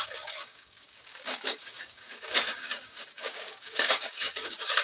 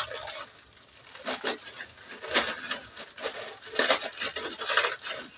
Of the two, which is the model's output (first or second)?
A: first